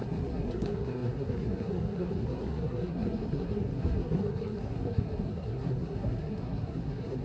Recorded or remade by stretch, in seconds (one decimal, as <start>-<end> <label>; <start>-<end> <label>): 0.0-7.2 remade

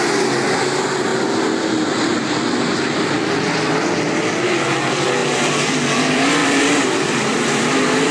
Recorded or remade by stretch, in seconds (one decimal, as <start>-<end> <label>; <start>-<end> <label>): 0.0-5.2 recorded; 5.2-6.0 remade; 6.0-6.4 recorded; 6.4-8.1 remade

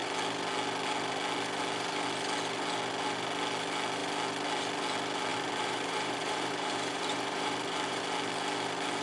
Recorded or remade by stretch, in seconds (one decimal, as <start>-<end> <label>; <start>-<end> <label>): 0.0-5.3 recorded; 5.3-8.0 remade; 8.0-9.0 recorded

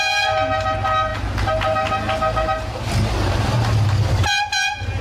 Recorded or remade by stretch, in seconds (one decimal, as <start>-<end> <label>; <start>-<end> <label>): 0.0-5.0 recorded